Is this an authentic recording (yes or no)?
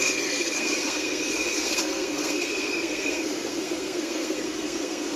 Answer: no